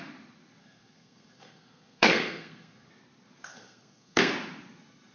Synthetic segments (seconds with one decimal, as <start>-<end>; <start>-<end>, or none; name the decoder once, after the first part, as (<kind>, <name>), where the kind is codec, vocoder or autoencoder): 0.6-2.9 (codec, SNAC); 3.5-4.3